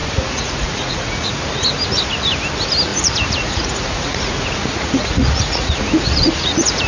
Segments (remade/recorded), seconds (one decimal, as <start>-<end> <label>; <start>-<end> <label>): 0.0-1.4 remade; 1.4-2.9 recorded; 2.9-6.9 remade